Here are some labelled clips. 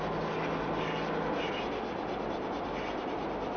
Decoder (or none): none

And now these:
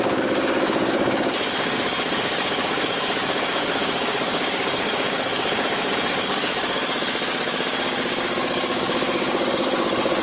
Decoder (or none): codec, DAC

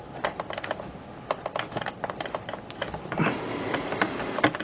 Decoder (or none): none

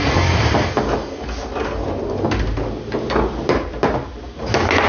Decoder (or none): none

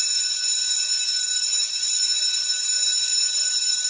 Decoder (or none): none